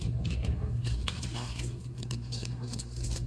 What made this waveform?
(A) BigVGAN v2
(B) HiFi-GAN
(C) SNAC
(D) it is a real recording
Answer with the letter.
C